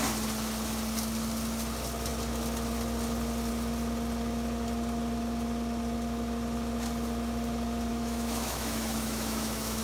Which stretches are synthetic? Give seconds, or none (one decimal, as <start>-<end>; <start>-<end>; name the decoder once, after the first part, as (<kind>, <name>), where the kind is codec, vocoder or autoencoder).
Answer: 7.9-9.8 (autoencoder, DAC-VAE)